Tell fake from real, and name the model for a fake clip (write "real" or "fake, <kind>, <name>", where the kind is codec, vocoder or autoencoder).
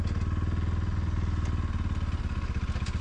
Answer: real